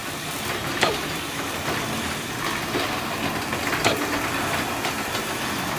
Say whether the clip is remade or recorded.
recorded